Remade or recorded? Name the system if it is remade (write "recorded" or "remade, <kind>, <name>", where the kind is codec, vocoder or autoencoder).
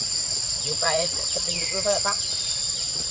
remade, vocoder, WaveNeXt